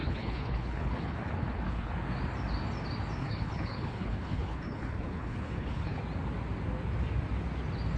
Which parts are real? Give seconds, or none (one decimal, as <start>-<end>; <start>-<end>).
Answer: 1.9-3.2; 6.0-8.0